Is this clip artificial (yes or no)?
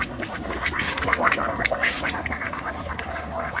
yes